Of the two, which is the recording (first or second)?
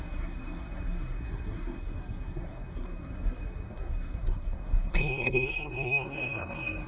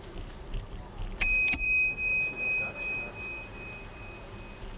second